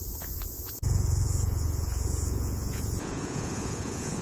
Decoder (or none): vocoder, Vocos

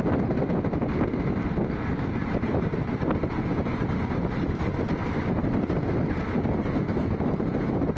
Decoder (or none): none